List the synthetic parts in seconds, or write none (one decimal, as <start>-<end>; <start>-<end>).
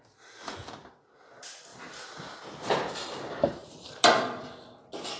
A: none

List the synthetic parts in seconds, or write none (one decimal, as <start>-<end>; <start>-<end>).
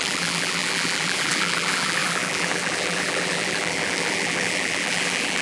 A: 0.0-5.4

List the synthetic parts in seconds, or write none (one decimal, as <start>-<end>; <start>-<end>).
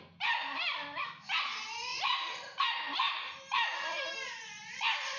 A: none